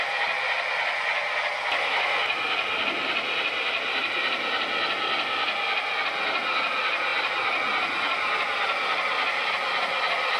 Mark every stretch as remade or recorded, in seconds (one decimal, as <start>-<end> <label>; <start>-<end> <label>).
0.0-10.4 recorded